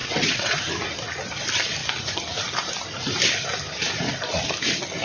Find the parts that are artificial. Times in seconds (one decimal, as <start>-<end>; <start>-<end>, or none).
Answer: 0.0-0.6